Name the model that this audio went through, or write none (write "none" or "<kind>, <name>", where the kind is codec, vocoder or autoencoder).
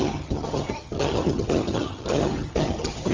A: vocoder, HiFi-GAN